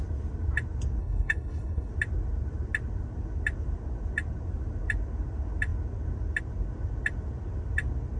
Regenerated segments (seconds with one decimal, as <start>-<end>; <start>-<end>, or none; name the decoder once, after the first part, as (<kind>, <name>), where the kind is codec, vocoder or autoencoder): 1.0-1.9 (codec, HILCodec)